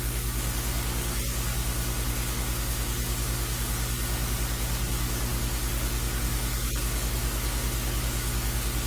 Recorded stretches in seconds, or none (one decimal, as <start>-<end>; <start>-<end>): none